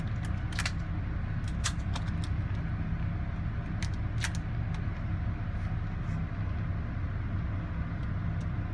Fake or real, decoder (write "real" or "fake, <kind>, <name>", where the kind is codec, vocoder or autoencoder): real